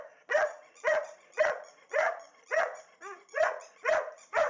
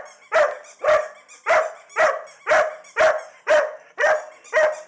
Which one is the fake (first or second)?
first